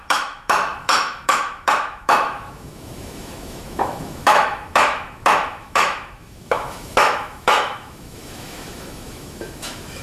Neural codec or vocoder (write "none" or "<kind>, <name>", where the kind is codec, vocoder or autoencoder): autoencoder, DAC-VAE